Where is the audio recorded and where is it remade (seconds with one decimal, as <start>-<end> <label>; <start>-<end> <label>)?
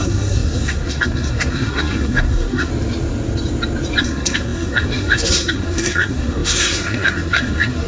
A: 0.0-2.7 remade; 2.7-4.0 recorded; 4.0-7.9 remade